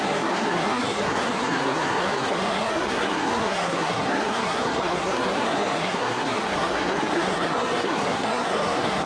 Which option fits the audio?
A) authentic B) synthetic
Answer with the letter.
B